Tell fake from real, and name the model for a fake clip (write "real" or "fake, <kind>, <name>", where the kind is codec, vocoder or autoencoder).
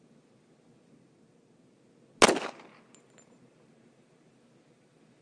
real